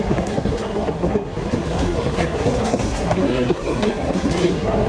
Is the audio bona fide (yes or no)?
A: no